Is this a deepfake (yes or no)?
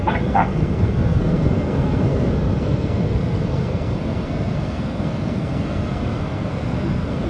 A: yes